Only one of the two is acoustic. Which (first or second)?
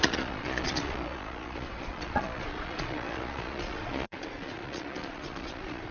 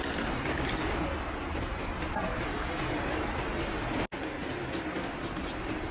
second